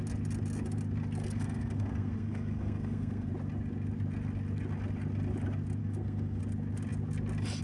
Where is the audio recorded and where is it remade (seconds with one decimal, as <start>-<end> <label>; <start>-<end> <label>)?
0.0-1.2 recorded; 1.2-3.3 remade; 3.3-5.8 recorded; 5.8-6.4 remade; 6.4-7.6 recorded